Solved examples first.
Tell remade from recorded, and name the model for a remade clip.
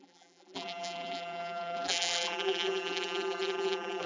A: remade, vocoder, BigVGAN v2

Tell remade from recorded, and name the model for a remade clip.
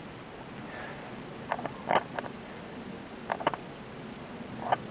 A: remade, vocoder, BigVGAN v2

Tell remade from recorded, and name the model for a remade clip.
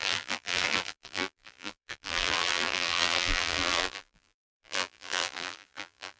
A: remade, vocoder, BigVGAN v2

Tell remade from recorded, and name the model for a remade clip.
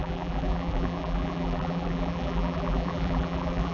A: remade, vocoder, BigVGAN v2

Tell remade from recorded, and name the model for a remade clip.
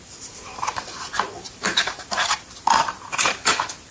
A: remade, vocoder, BigVGAN v2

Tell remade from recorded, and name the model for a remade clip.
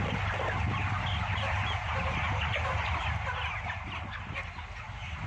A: recorded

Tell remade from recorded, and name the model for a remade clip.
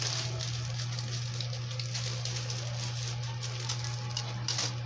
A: recorded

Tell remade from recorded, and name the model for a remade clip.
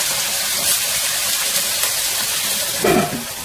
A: remade, vocoder, BigVGAN v2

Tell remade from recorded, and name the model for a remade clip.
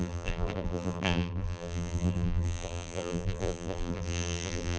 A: remade, vocoder, BigVGAN v2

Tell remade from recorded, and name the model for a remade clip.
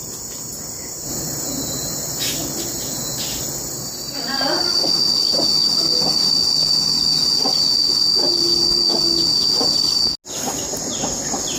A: recorded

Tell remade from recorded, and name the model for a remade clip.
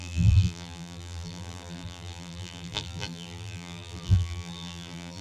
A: remade, vocoder, BigVGAN v2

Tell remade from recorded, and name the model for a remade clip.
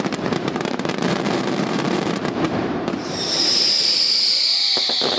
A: remade, vocoder, BigVGAN v2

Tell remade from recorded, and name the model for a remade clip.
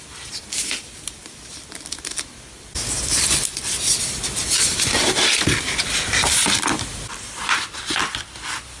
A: remade, vocoder, BigVGAN v2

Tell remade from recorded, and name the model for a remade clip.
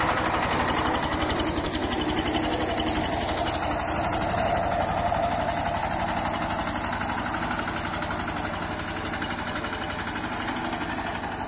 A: recorded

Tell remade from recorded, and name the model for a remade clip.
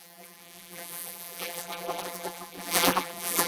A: remade, vocoder, BigVGAN v2